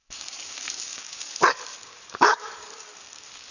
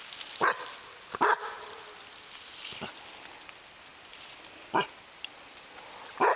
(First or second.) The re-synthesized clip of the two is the first